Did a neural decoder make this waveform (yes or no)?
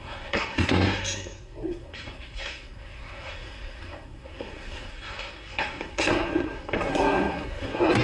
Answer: yes